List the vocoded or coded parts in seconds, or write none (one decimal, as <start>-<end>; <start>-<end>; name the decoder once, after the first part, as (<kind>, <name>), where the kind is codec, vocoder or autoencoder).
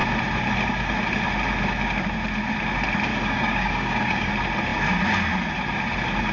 3.1-4.3 (codec, DAC)